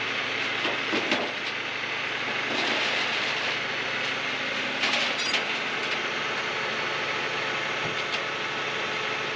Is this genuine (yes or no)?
yes